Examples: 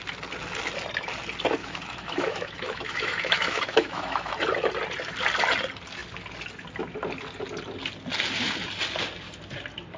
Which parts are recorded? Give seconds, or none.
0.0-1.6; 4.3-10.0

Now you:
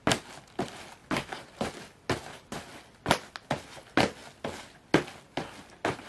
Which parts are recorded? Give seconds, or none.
0.0-6.1

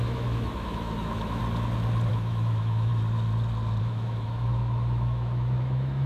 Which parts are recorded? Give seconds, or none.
1.4-2.1; 2.9-3.8

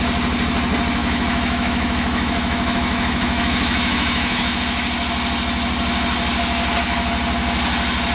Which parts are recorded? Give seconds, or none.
0.0-1.0; 4.6-8.1

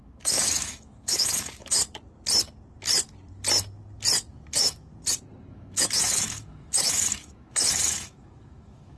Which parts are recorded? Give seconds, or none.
1.8-4.3; 4.9-5.5

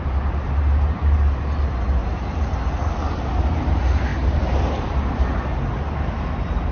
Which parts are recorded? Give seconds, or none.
0.0-6.7